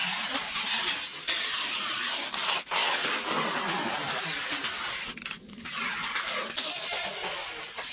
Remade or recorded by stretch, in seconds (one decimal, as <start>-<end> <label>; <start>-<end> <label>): 0.0-0.9 remade; 0.9-7.9 recorded